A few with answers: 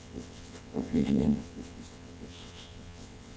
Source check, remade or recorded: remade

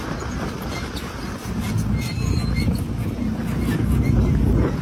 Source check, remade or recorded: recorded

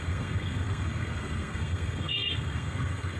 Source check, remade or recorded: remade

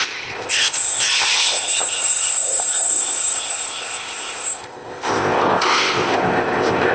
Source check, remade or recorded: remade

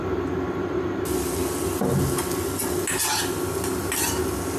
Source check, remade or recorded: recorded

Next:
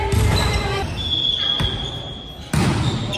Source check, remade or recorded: recorded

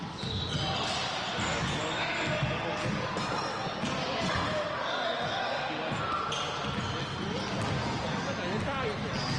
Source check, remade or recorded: recorded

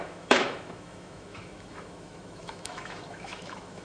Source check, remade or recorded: remade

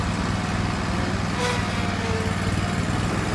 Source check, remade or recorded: recorded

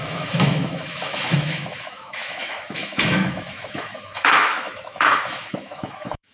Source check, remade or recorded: remade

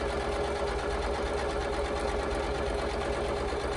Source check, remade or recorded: recorded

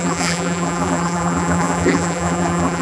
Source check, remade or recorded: remade